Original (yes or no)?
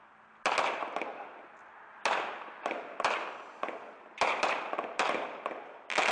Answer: yes